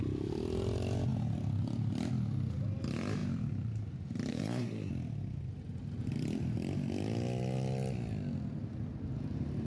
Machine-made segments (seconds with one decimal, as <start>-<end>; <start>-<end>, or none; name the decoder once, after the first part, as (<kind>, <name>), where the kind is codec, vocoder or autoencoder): 4.3-4.9 (codec, SNAC)